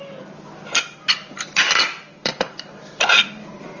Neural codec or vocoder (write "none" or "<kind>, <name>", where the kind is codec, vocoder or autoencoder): vocoder, BigVGAN v2